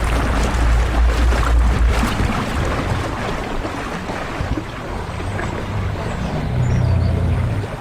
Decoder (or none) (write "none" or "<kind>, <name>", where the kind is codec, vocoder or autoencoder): none